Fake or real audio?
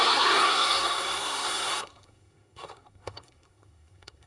fake